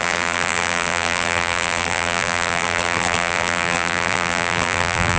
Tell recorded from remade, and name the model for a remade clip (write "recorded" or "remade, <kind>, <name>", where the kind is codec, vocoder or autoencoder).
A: remade, vocoder, BigVGAN v2